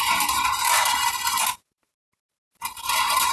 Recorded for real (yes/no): no